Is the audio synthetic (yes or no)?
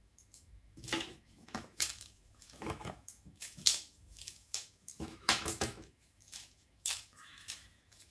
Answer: yes